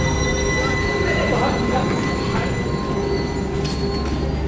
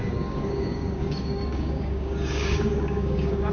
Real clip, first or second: first